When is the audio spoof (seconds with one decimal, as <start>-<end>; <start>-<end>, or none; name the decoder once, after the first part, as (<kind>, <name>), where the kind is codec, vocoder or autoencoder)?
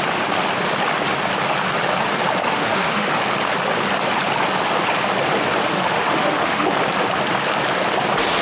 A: 2.4-3.1 (autoencoder, DAC-VAE); 5.7-6.7